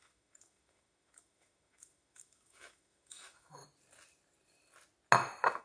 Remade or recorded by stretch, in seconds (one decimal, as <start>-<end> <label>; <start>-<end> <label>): 0.0-3.6 remade; 3.6-5.6 recorded